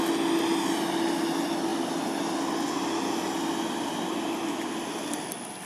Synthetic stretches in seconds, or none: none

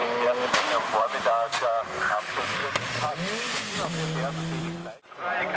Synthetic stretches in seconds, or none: 0.6-5.6 (vocoder, BigVGAN v2)

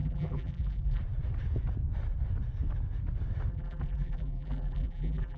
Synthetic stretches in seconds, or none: 0.0-1.0 (vocoder, BigVGAN v2); 3.5-5.4

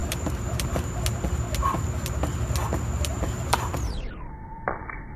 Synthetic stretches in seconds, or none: 0.0-0.9 (vocoder, BigVGAN v2); 1.6-2.2; 3.1-3.8

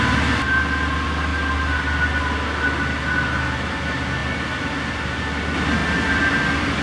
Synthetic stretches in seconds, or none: 0.0-1.3 (vocoder, BigVGAN v2); 3.4-4.2; 4.9-5.8

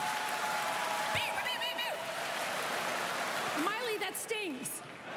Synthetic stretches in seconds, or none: 0.0-2.9 (vocoder, BigVGAN v2)